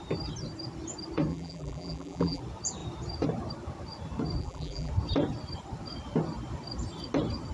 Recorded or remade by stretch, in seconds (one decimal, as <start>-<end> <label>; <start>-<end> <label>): 0.0-1.3 recorded; 1.3-2.4 remade; 2.4-4.4 recorded; 4.4-4.9 remade; 4.9-7.5 recorded